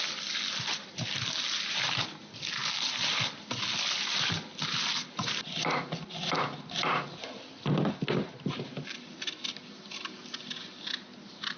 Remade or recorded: recorded